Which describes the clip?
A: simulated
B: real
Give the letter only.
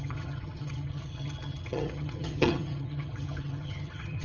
A